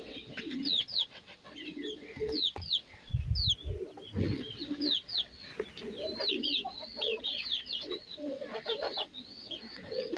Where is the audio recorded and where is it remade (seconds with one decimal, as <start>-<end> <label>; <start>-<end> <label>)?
0.0-3.1 remade; 3.1-4.2 recorded; 4.2-5.5 remade; 5.5-6.3 recorded; 6.3-10.2 remade